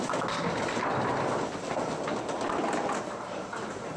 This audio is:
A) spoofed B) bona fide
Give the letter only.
B